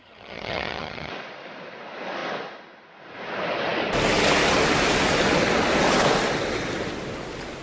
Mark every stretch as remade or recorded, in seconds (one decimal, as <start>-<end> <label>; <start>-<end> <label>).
0.0-1.1 remade; 1.1-7.6 recorded